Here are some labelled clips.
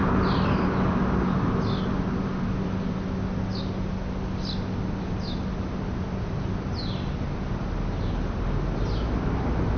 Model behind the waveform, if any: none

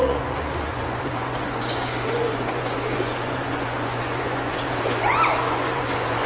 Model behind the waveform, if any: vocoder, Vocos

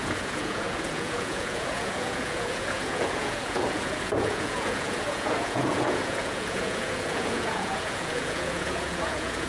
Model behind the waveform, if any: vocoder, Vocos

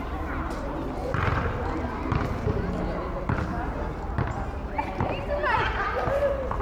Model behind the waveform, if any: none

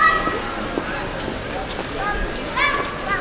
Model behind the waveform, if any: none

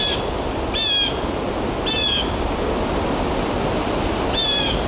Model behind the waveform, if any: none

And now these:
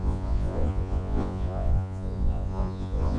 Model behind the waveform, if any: vocoder, Vocos